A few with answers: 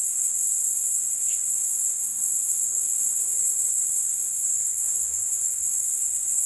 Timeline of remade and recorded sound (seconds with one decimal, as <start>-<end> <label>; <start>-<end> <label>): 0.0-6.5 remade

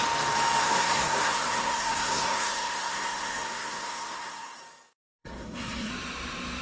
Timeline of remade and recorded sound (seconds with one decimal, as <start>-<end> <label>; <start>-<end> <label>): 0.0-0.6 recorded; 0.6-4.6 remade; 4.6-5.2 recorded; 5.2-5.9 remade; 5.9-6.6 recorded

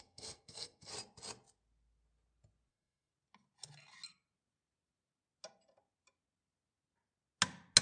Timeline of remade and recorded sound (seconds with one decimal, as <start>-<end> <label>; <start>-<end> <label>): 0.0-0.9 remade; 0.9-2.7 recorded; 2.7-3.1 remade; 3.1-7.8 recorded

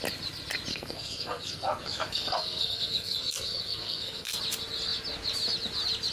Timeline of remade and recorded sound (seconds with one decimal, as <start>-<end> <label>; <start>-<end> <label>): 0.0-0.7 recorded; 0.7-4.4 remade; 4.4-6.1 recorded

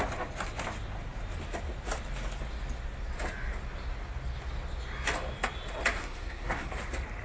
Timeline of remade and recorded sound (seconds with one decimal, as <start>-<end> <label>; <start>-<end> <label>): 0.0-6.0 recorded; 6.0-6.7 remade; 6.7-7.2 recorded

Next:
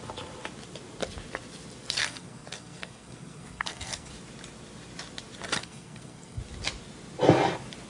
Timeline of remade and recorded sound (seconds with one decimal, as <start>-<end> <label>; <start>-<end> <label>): 0.0-2.0 recorded; 2.0-4.1 remade; 4.1-5.6 recorded; 5.6-6.4 remade; 6.4-7.9 recorded

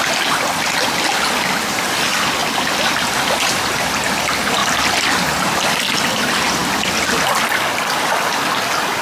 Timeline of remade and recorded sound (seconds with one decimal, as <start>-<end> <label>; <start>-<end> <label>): 0.0-9.0 recorded

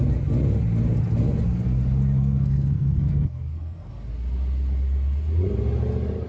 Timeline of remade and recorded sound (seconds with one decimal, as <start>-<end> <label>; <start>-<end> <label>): 0.0-2.2 recorded; 2.2-3.9 remade; 3.9-6.3 recorded